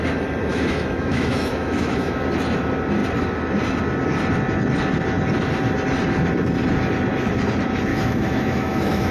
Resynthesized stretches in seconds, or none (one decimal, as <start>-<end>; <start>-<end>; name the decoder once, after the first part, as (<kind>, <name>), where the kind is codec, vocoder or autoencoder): 0.5-2.2 (autoencoder, DAC-VAE); 7.9-9.1